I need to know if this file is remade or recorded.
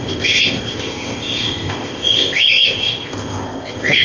remade